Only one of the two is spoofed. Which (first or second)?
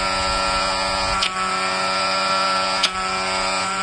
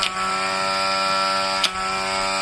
first